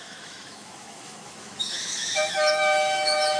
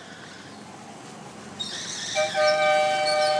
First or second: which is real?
second